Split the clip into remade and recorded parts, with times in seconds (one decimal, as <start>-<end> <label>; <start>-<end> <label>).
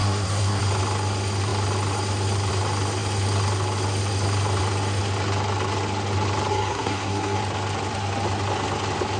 0.0-0.6 remade; 0.6-6.5 recorded; 6.5-7.4 remade; 7.4-9.2 recorded